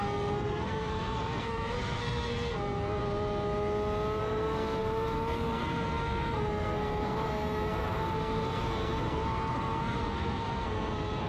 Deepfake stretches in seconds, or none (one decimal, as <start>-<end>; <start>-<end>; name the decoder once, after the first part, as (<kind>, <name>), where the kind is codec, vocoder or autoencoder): 0.0-3.0 (codec, SNAC); 4.2-11.3

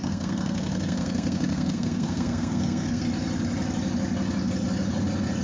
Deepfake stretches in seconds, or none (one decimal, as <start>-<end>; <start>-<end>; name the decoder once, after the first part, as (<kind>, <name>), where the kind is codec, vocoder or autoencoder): 0.0-3.0 (codec, SNAC)

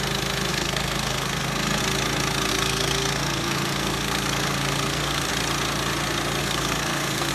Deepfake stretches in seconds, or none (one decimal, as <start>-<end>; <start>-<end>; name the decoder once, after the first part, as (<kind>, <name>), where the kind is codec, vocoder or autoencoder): 0.5-1.8 (codec, SNAC); 2.5-5.3; 6.4-7.3

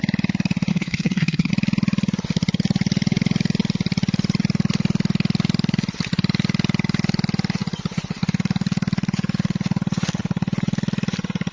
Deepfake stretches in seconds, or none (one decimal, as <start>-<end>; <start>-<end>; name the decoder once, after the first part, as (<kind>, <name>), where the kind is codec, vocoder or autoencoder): 0.7-1.5 (codec, SNAC)

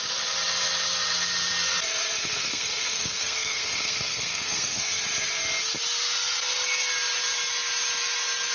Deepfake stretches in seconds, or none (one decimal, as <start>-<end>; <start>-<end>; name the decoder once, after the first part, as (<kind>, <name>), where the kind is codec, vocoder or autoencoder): 2.2-5.0 (codec, SNAC)

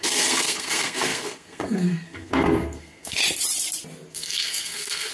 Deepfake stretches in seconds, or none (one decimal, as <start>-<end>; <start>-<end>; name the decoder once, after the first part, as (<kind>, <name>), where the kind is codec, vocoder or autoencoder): 0.0-3.2 (codec, SNAC); 4.1-5.1

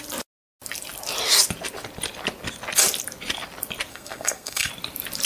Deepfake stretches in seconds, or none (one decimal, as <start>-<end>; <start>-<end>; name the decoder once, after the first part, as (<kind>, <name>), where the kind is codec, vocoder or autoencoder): 3.9-4.7 (codec, SNAC)